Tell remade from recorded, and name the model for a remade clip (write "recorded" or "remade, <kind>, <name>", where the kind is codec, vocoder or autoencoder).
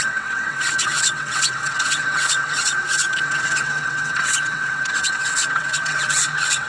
remade, vocoder, WaveNeXt